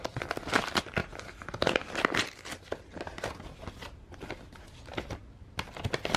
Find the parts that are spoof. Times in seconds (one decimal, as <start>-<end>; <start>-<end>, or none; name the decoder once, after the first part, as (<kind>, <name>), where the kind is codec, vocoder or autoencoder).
none